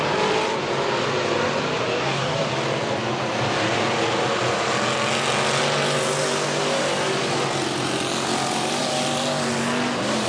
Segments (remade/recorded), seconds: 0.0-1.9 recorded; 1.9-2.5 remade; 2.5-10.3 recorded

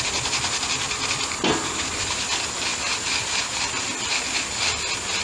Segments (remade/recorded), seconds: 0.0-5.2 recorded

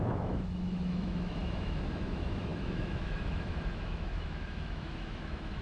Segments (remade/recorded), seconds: 0.0-5.6 remade